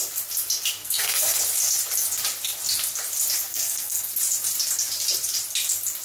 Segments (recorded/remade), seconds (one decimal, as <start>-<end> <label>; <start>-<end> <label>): 0.0-0.8 recorded; 0.8-1.4 remade; 1.4-3.5 recorded; 3.5-4.1 remade; 4.1-6.0 recorded

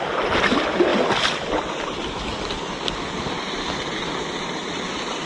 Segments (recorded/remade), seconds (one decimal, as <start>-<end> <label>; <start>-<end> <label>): 0.0-5.3 recorded

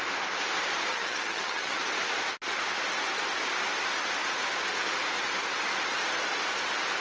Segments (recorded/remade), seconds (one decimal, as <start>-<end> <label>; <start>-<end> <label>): 0.0-0.9 recorded; 0.9-1.8 remade; 1.8-7.0 recorded